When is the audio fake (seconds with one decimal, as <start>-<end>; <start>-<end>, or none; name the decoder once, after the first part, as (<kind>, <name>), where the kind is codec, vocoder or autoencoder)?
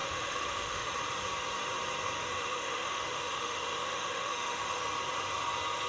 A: 0.0-0.9 (autoencoder, DAC-VAE); 2.2-4.8